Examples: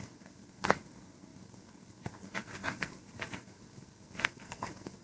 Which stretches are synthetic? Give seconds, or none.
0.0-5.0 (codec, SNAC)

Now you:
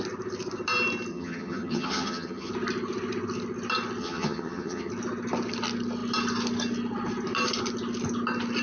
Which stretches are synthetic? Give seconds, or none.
1.1-2.5 (vocoder, HiFi-GAN); 4.0-4.9

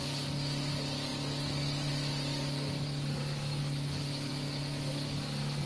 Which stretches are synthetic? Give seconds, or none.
none

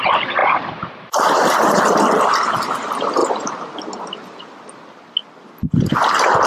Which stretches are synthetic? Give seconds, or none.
0.4-1.8 (vocoder, BigVGAN v2); 3.2-3.7